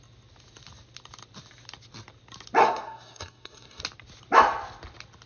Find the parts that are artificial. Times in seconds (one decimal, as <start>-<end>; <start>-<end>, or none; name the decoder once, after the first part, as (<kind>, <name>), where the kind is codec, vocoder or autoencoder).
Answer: 2.6-3.8 (codec, SNAC)